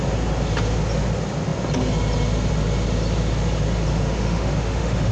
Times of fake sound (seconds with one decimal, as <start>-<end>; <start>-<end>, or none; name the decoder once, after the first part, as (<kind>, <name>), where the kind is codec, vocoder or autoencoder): 3.9-5.1 (autoencoder, DAC-VAE)